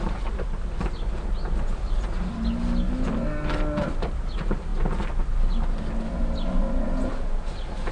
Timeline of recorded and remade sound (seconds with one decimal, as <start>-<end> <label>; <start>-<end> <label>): 0.0-7.9 recorded